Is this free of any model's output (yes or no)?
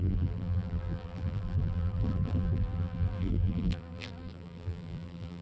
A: no